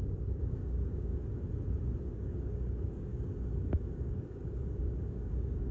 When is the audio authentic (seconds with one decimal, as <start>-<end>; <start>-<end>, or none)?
1.1-2.0